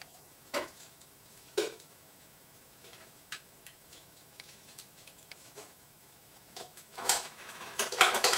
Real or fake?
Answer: fake